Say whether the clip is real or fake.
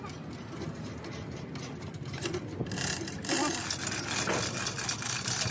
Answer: real